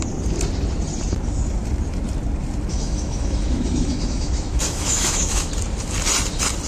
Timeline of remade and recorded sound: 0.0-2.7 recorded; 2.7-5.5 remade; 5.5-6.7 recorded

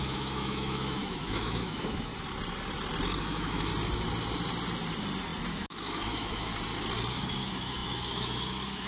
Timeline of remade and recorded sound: 0.0-2.1 remade; 2.1-3.2 recorded; 3.2-3.7 remade; 3.7-5.5 recorded; 5.5-6.5 remade; 6.5-7.1 recorded; 7.1-8.9 remade

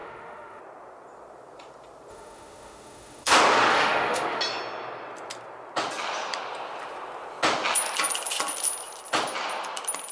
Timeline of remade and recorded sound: 0.0-0.6 remade; 0.6-2.1 recorded; 2.1-3.3 remade; 3.3-3.7 recorded; 3.7-4.4 remade; 4.4-10.1 recorded

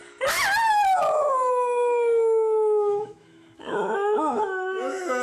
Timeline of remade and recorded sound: 0.0-0.7 recorded; 0.7-5.2 remade

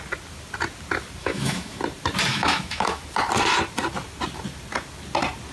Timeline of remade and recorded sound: 0.0-1.2 recorded; 1.2-1.8 remade; 1.8-2.3 recorded; 2.3-3.0 remade; 3.0-5.5 recorded

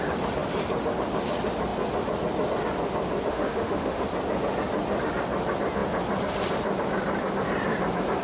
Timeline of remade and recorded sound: 0.0-3.3 recorded; 3.3-4.0 remade; 4.0-8.2 recorded

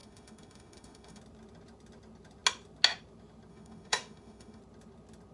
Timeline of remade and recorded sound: 0.0-1.2 remade; 1.2-3.5 recorded; 3.5-4.6 remade; 4.6-5.3 recorded